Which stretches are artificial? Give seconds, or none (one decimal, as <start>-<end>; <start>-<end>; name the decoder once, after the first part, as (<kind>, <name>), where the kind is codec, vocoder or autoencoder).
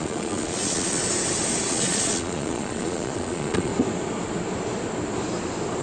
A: 0.0-1.0 (vocoder, Vocos); 1.7-3.7